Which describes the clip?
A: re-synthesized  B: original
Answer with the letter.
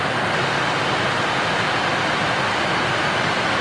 B